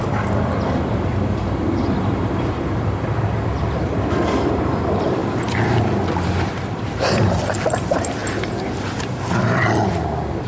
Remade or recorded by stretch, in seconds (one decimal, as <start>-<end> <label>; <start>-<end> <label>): 0.0-5.2 remade; 5.2-6.6 recorded; 6.6-8.2 remade; 8.2-9.4 recorded; 9.4-10.5 remade